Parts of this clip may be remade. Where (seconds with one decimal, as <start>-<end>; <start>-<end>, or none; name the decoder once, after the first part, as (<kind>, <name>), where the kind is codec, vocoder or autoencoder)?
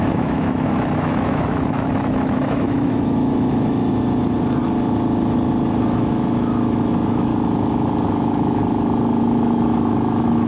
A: 0.0-3.8 (autoencoder, DAC-VAE); 5.8-7.3; 8.2-8.6; 9.2-10.5